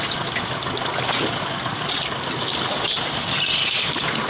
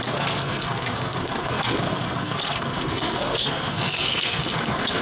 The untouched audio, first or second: first